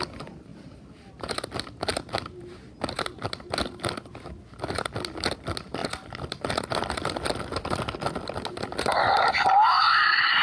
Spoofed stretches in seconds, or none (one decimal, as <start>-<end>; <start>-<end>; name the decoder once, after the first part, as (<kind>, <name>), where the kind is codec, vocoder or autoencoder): 0.5-1.4 (vocoder, BigVGAN v2)